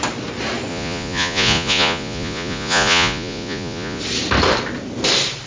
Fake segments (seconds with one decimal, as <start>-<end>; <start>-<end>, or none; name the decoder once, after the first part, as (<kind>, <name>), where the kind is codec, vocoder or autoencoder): 0.7-4.0 (vocoder, Vocos)